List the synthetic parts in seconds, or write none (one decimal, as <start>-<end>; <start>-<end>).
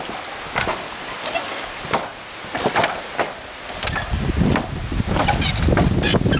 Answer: none